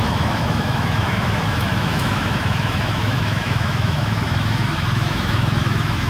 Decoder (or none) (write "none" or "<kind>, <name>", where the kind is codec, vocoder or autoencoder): autoencoder, DAC-VAE